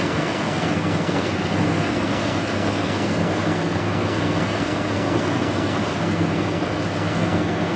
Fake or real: fake